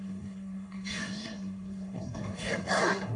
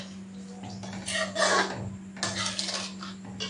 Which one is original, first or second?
second